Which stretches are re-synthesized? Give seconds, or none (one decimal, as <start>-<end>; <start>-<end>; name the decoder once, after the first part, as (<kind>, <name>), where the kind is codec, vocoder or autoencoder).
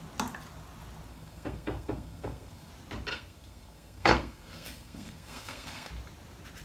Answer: 1.1-2.7 (codec, SNAC); 3.1-5.9